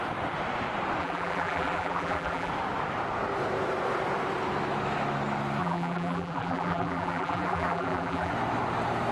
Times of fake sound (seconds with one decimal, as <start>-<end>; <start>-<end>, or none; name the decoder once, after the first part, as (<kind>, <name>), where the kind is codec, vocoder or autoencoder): 1.0-2.5 (vocoder, BigVGAN v2); 5.6-8.3